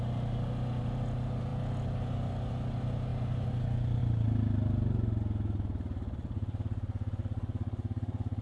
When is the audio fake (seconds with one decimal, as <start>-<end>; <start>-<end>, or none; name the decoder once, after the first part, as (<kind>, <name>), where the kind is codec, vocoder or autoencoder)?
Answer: 4.0-8.4 (vocoder, BigVGAN v2)